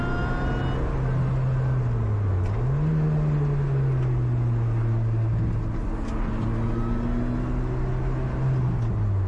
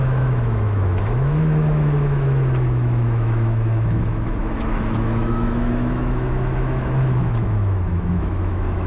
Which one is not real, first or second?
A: second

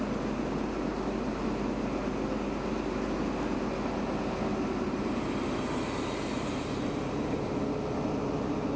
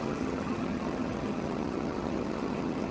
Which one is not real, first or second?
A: second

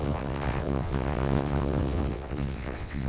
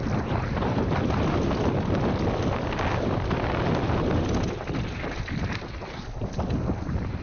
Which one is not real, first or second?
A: first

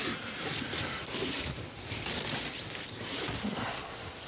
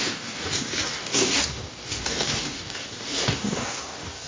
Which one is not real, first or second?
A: second